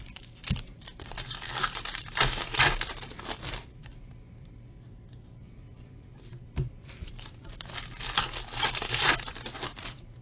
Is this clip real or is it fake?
fake